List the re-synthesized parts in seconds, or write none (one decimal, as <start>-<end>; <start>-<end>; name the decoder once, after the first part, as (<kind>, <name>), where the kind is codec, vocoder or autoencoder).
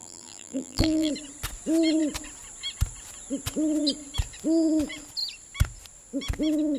0.0-1.1 (vocoder, BigVGAN v2)